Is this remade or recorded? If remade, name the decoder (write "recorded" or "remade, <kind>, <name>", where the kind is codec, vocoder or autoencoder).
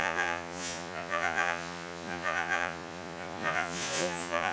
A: remade, vocoder, Vocos